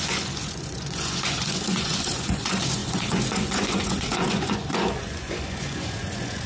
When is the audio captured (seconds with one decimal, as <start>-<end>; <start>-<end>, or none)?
none